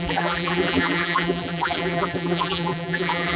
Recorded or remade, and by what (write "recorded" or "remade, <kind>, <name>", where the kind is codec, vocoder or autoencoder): remade, vocoder, BigVGAN v2